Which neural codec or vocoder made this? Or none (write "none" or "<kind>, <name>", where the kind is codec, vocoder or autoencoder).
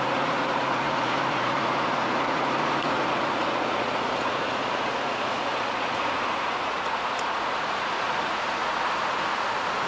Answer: vocoder, Vocos